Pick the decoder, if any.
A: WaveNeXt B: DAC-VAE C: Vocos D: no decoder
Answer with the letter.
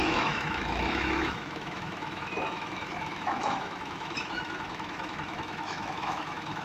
B